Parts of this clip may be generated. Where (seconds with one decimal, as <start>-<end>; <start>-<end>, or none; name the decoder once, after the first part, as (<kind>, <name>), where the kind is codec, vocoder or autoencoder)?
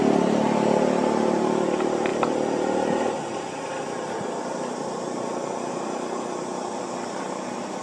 none